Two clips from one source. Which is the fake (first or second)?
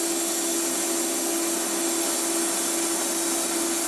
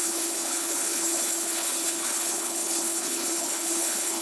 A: second